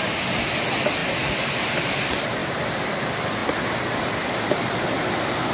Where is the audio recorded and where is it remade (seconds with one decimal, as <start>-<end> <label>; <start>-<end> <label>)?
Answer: 0.0-5.5 recorded